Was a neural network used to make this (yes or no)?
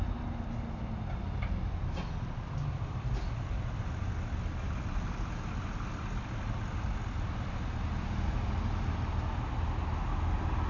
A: no